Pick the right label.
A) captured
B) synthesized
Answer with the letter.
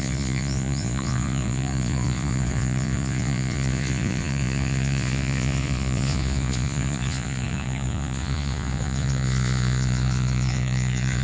B